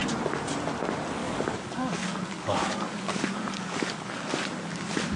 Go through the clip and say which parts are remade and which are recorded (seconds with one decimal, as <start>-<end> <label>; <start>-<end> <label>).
0.0-1.2 recorded; 1.2-4.2 remade; 4.2-5.2 recorded